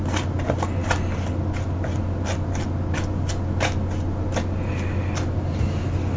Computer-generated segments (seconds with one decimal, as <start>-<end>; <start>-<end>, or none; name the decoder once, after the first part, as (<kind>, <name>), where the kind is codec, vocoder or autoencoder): none

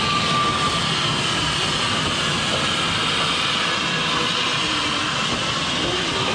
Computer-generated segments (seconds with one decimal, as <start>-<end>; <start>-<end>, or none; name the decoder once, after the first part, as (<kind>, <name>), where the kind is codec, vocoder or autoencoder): none

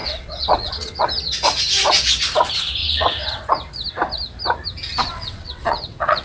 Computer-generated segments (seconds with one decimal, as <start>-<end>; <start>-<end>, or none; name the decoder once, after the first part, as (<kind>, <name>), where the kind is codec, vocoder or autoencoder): 0.0-1.1 (vocoder, WaveNeXt); 2.8-3.5; 5.0-6.2

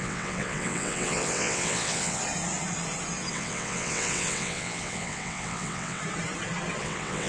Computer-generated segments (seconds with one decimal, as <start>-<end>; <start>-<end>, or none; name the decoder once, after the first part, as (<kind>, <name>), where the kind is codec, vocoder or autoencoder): 0.0-2.2 (vocoder, WaveNeXt); 3.3-6.0; 6.8-7.3

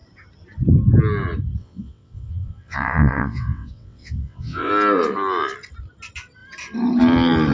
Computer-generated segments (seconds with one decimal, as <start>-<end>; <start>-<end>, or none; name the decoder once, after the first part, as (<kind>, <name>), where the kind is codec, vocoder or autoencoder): 1.6-4.7 (vocoder, WaveNeXt)

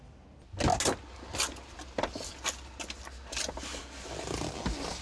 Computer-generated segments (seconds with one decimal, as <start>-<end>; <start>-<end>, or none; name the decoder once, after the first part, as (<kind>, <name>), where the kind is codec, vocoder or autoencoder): none

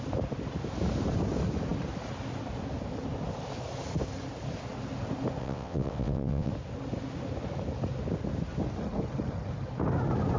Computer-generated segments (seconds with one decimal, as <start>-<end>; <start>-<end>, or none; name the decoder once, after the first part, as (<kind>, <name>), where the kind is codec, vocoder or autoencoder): 5.4-6.5 (vocoder, WaveNeXt)

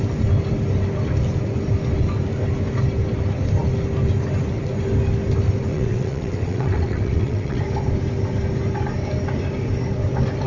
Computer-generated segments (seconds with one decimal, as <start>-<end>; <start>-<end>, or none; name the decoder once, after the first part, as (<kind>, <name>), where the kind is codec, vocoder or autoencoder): 5.7-7.6 (vocoder, WaveNeXt)